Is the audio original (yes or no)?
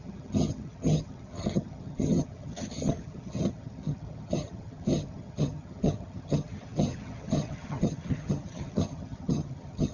no